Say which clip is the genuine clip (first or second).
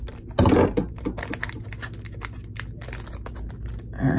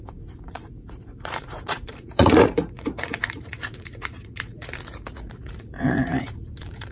first